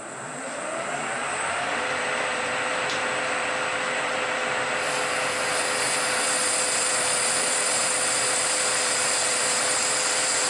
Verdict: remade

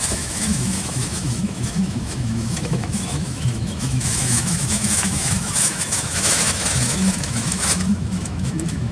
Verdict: remade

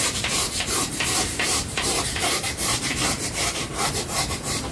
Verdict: remade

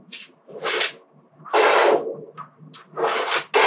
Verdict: recorded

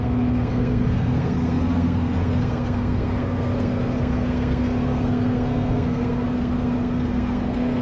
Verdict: remade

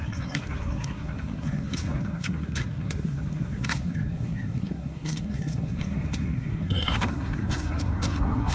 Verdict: remade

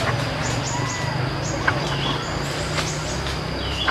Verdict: recorded